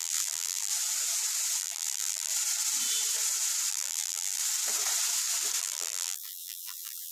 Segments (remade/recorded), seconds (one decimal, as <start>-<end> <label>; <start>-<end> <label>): 0.0-0.7 remade; 0.7-1.6 recorded; 1.6-2.3 remade; 2.3-3.7 recorded; 3.7-4.4 remade; 4.4-5.6 recorded; 5.6-7.1 remade